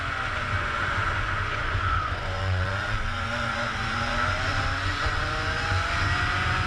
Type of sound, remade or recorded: remade